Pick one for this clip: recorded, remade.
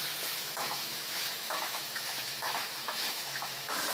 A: remade